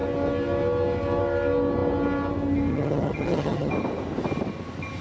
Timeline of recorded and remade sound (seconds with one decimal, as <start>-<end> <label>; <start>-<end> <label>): 0.0-2.7 recorded; 2.7-3.7 remade; 3.7-5.0 recorded